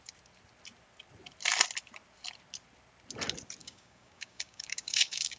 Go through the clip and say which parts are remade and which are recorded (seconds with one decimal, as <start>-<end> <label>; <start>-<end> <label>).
0.0-3.6 recorded; 3.6-5.4 remade